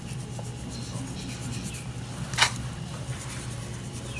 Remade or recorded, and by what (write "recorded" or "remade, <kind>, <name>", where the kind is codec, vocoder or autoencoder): recorded